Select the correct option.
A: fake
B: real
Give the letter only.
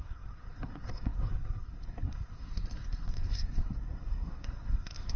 A